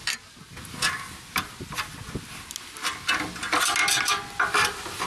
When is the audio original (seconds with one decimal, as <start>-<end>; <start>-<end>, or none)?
0.0-5.1